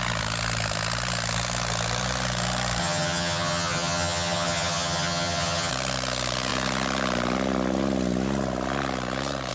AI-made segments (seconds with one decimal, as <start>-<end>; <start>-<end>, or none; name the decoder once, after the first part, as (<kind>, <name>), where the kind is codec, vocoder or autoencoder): 2.8-5.7 (vocoder, HiFi-GAN)